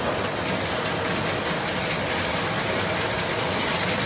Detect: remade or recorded recorded